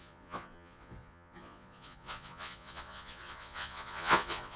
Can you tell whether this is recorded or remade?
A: remade